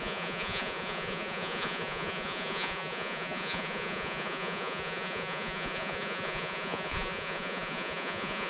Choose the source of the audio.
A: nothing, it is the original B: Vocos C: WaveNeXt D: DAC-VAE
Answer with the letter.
B